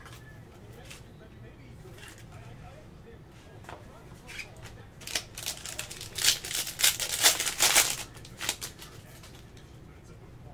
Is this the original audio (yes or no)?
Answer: yes